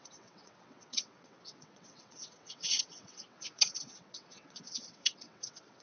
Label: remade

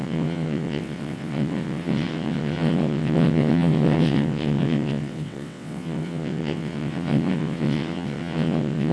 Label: remade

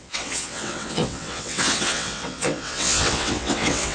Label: remade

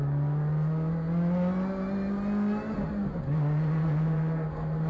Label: recorded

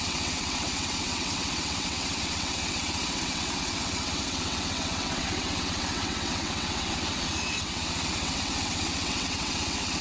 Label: remade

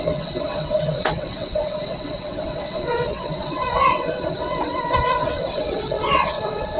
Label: remade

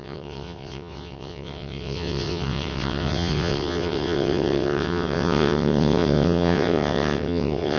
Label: remade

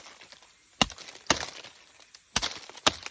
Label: recorded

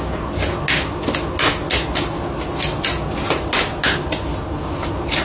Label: recorded